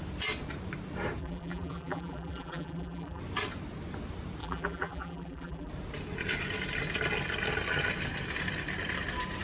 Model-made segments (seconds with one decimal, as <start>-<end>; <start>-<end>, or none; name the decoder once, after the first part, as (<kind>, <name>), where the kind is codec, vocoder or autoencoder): 1.2-3.2 (vocoder, BigVGAN v2); 4.4-5.7